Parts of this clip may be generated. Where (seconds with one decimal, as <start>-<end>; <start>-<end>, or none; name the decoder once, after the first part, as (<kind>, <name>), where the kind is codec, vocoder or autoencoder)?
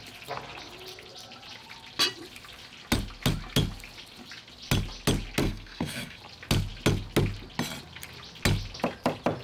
5.4-6.2 (codec, SNAC)